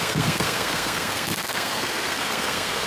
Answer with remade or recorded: remade